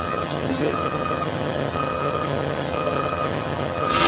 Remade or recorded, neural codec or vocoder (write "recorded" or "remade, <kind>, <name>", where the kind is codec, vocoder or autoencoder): remade, vocoder, HiFi-GAN